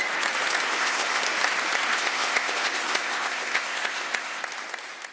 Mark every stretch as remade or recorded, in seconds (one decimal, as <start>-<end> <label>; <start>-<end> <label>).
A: 0.0-0.7 recorded; 0.7-1.2 remade; 1.2-1.9 recorded; 1.9-4.4 remade; 4.4-5.1 recorded

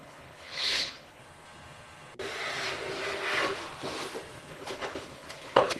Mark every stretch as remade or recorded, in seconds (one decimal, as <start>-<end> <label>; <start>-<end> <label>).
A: 0.0-1.2 remade; 1.2-4.5 recorded; 4.5-5.8 remade

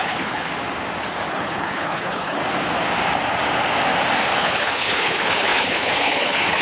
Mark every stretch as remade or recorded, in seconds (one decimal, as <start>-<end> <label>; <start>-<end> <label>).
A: 0.0-0.5 remade; 0.5-1.3 recorded; 1.3-2.4 remade; 2.4-4.4 recorded; 4.4-6.6 remade

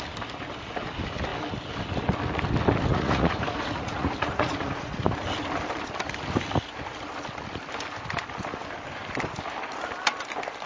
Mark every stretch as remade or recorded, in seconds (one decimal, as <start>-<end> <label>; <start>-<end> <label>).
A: 0.0-2.9 recorded; 2.9-5.2 remade; 5.2-10.7 recorded

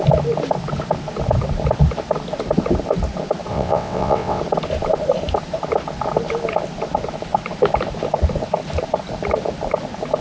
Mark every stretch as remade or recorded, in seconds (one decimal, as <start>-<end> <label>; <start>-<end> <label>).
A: 0.0-3.5 recorded; 3.5-4.4 remade; 4.4-10.2 recorded

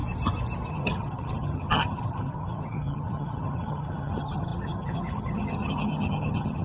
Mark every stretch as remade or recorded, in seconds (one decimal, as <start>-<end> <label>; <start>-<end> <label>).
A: 0.0-0.7 recorded; 0.7-6.6 remade

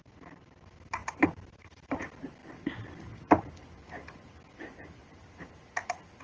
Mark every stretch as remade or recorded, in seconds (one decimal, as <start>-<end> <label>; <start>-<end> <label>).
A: 0.0-1.0 recorded; 1.0-2.0 remade; 2.0-5.0 recorded; 5.0-5.6 remade; 5.6-6.2 recorded

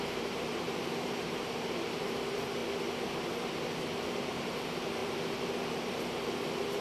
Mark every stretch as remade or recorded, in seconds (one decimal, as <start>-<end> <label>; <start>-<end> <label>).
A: 0.0-2.6 remade; 2.6-4.0 recorded; 4.0-6.8 remade